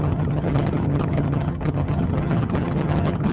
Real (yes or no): no